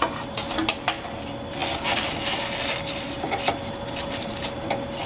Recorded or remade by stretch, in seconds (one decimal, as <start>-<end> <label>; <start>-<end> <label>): 0.0-5.1 recorded